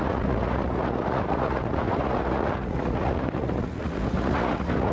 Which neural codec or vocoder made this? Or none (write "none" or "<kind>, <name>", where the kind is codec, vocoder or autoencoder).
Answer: vocoder, Vocos